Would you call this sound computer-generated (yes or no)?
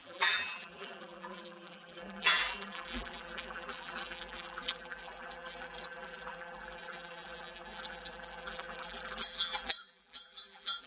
yes